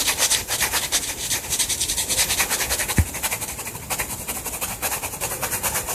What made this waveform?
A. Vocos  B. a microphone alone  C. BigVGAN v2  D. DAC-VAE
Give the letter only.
B